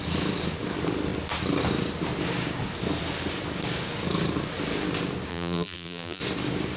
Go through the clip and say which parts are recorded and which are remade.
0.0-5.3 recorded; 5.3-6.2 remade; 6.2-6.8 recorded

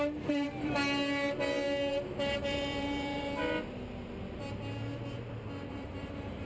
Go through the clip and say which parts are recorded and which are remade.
0.0-0.8 remade; 0.8-1.9 recorded; 1.9-3.4 remade; 3.4-5.7 recorded; 5.7-6.5 remade